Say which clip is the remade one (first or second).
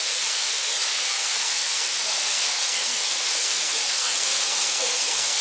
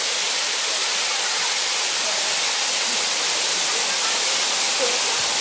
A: first